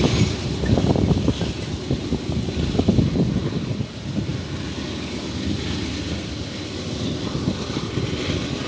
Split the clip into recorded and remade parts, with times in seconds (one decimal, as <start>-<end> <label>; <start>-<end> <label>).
0.0-8.7 recorded